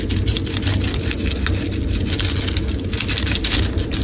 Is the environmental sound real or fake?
real